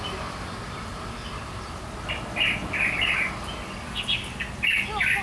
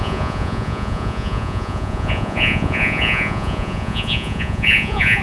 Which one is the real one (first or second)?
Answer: first